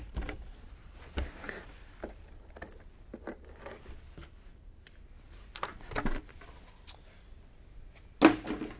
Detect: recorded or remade recorded